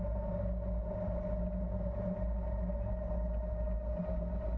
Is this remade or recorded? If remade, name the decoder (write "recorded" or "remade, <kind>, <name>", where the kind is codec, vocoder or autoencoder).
recorded